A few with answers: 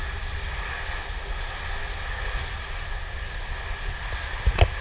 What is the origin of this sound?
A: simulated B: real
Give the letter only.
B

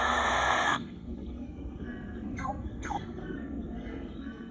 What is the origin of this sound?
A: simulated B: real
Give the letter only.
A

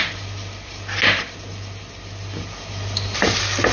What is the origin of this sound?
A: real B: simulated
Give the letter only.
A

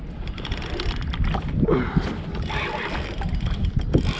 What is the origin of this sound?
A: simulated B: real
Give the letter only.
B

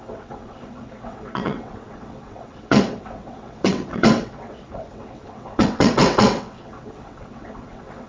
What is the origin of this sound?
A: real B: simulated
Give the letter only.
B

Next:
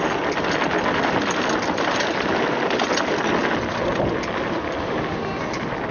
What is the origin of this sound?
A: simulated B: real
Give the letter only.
B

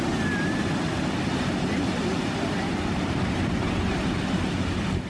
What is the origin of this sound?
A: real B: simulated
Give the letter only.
A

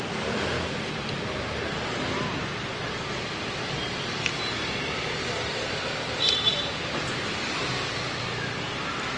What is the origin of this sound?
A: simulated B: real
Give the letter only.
B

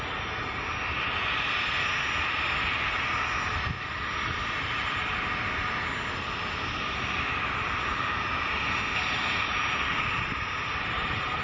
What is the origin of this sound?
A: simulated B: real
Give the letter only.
B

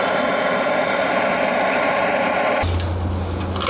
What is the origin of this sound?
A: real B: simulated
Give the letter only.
A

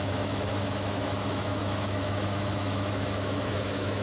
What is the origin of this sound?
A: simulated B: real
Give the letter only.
A